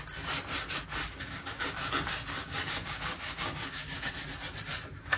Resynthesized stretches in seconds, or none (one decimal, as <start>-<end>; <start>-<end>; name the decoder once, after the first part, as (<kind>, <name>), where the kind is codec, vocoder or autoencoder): 1.0-1.9 (codec, DAC); 2.4-4.1